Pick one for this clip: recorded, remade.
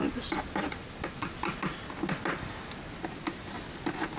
recorded